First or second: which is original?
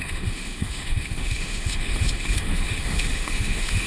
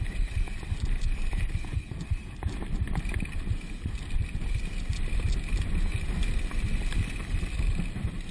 second